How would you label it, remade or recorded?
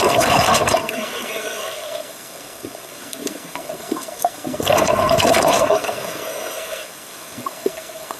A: remade